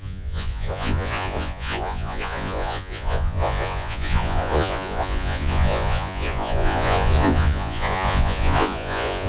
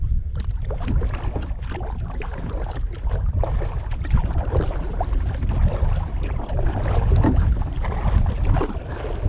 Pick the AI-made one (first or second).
first